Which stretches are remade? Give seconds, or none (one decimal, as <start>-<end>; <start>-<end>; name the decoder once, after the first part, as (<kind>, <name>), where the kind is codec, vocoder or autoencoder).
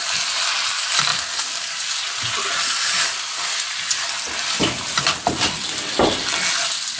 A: none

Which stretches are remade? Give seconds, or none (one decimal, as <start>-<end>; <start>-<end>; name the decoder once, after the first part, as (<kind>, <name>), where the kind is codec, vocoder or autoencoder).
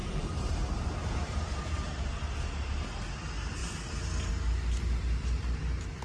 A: 0.0-1.9 (vocoder, BigVGAN v2)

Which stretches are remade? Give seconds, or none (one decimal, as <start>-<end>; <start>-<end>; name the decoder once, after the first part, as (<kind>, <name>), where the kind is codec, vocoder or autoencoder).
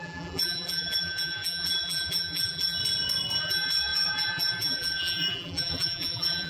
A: 0.0-2.8 (vocoder, BigVGAN v2); 3.4-6.5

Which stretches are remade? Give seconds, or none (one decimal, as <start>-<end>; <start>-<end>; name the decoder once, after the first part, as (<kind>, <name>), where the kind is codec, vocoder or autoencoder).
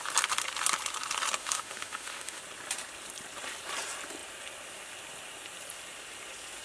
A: 1.4-2.4 (autoencoder, DAC-VAE)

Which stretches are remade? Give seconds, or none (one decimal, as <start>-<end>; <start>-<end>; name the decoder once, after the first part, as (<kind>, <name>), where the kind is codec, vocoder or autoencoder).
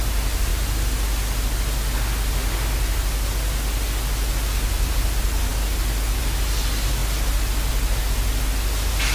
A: none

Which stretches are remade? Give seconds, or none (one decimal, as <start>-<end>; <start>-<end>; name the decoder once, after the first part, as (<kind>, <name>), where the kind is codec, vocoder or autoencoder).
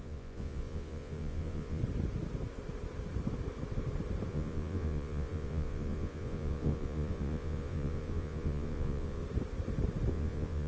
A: 0.0-1.8 (vocoder, Vocos); 4.3-9.2; 10.1-10.7